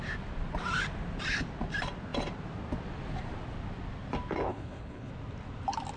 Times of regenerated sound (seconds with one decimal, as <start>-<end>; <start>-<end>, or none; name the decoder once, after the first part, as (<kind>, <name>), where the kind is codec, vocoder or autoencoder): 4.5-5.1 (codec, HILCodec)